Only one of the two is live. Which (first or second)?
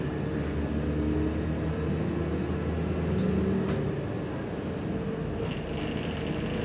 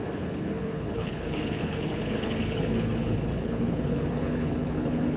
first